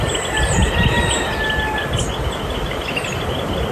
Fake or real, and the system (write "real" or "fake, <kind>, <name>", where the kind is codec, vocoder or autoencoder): real